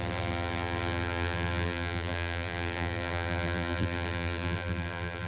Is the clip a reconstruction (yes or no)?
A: yes